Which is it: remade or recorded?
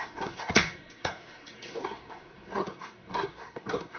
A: remade